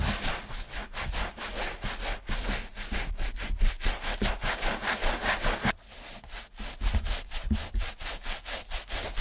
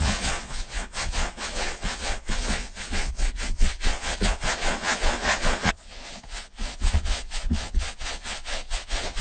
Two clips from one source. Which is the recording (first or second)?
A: first